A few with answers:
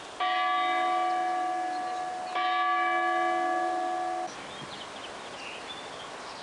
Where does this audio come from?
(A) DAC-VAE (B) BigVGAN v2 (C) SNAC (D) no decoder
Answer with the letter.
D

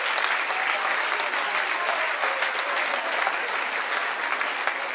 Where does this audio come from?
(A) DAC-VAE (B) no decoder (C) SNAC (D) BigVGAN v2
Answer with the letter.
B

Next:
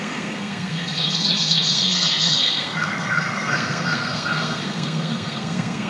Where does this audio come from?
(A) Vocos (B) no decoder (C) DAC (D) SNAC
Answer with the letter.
D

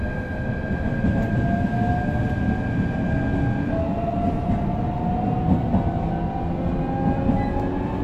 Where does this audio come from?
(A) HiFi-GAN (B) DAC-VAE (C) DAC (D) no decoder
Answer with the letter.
D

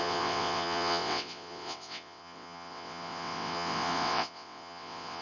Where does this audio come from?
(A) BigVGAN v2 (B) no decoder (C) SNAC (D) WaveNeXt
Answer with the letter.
D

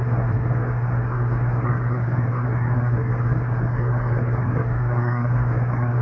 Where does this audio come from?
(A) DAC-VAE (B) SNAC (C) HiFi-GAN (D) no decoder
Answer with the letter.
B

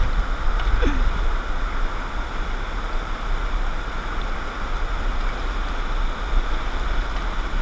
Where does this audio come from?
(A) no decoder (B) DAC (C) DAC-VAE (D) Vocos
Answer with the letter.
A